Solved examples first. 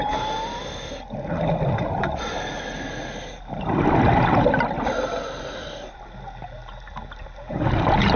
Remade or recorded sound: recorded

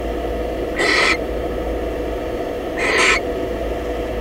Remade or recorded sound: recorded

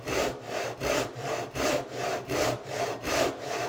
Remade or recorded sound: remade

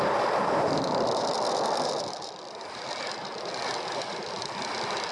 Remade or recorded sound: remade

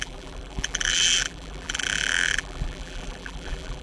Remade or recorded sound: remade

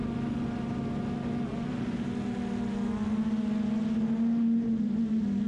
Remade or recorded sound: recorded